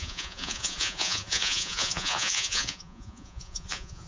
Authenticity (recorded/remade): remade